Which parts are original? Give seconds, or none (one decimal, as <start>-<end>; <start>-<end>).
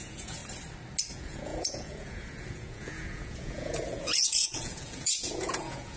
0.4-1.1